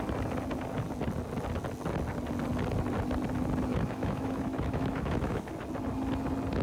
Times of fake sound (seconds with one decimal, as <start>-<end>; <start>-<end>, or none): 3.7-5.5